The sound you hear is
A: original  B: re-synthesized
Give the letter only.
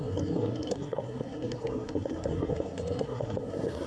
B